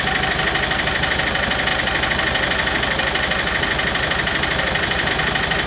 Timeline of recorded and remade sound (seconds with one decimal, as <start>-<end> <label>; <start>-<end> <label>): 0.0-1.7 recorded; 1.7-5.1 remade; 5.1-5.7 recorded